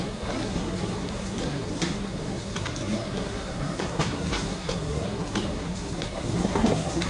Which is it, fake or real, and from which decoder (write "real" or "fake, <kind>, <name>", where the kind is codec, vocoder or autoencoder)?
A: fake, codec, SNAC